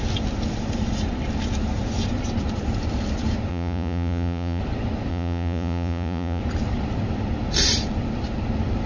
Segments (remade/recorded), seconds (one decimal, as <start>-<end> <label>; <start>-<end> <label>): 0.0-3.5 recorded; 3.5-4.6 remade; 4.6-5.1 recorded; 5.1-6.4 remade; 6.4-8.9 recorded